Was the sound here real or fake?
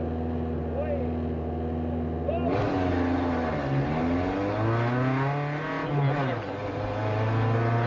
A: real